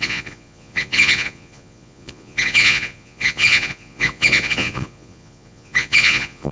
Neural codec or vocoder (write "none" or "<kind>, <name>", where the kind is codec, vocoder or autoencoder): vocoder, Vocos